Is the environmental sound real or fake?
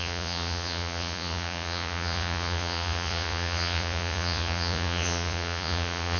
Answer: fake